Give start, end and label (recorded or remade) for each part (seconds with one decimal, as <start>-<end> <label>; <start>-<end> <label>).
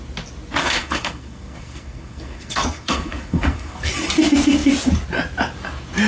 0.0-0.6 recorded; 0.6-3.9 remade; 3.9-6.1 recorded